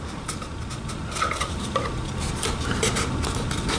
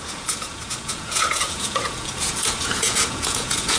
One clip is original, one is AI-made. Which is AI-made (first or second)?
second